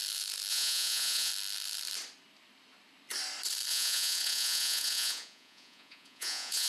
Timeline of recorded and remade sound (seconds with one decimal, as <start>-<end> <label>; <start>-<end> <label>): 0.0-0.5 recorded; 0.5-1.3 remade; 1.3-3.7 recorded; 3.7-6.7 remade